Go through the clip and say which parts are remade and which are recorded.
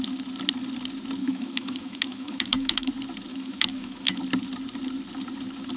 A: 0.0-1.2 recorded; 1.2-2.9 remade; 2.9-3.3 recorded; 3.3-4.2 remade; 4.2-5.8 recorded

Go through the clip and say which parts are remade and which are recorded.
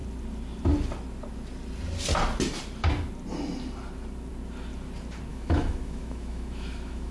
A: 0.0-5.3 recorded; 5.3-7.1 remade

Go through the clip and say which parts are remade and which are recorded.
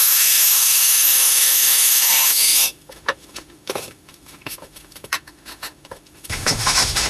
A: 0.0-7.1 remade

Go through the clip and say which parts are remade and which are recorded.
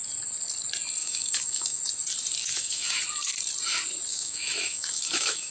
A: 0.0-1.0 recorded; 1.0-1.8 remade; 1.8-2.4 recorded; 2.4-3.0 remade; 3.0-4.1 recorded; 4.1-5.5 remade